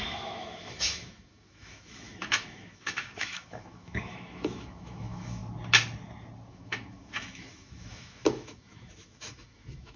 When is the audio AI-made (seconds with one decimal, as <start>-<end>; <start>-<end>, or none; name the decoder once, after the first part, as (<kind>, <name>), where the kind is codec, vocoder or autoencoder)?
0.0-5.4 (autoencoder, DAC-VAE); 6.5-10.0